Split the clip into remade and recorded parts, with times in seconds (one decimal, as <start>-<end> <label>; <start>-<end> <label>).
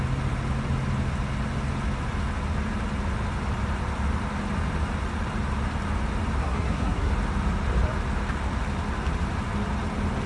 0.0-6.4 recorded; 6.4-7.1 remade; 7.1-10.3 recorded